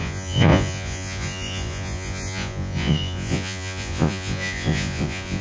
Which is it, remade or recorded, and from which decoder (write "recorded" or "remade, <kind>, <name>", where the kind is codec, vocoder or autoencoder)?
remade, vocoder, Vocos